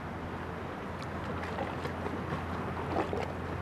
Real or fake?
real